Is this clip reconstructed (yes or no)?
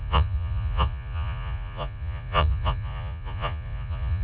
yes